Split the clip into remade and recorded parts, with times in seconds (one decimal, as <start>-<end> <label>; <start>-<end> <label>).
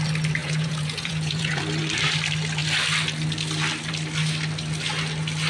0.0-0.4 recorded; 0.4-1.6 remade; 1.6-5.5 recorded